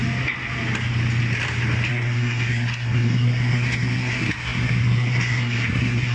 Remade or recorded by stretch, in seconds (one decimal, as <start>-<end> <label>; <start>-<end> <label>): 0.0-1.9 recorded; 1.9-6.1 remade